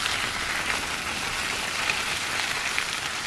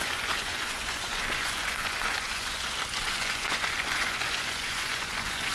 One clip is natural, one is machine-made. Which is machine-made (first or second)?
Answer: second